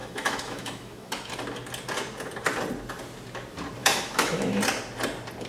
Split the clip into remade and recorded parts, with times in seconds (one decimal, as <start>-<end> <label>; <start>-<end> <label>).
0.0-1.3 remade; 1.3-3.8 recorded; 3.8-4.6 remade; 4.6-5.5 recorded